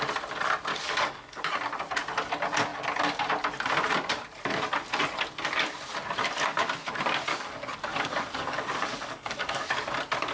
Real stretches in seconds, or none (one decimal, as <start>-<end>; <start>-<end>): 0.0-0.7; 1.4-7.3; 9.9-10.3